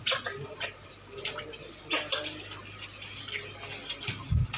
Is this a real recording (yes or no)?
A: yes